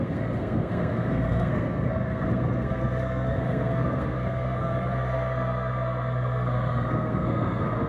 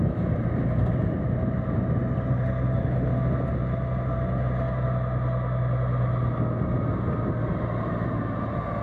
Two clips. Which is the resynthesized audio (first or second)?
first